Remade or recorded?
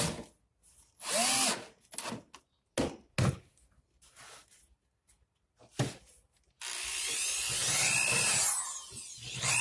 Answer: recorded